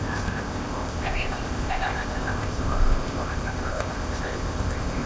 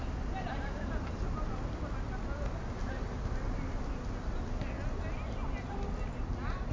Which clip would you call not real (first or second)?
first